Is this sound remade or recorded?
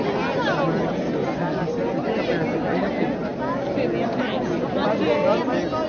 recorded